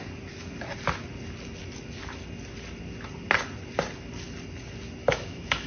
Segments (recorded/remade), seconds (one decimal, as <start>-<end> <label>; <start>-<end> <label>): 0.0-5.0 recorded; 5.0-5.7 remade